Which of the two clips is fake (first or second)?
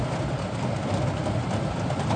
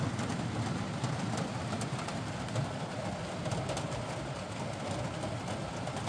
first